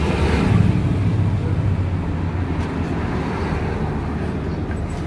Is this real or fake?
real